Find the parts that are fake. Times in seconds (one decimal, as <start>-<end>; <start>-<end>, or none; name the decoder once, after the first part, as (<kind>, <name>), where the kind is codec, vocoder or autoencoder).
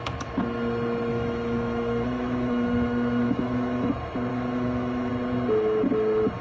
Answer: 1.1-3.9 (autoencoder, DAC-VAE); 4.3-5.1